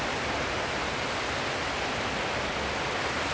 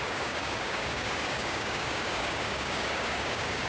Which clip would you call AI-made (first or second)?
second